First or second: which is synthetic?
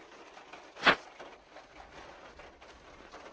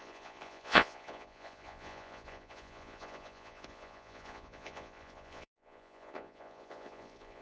second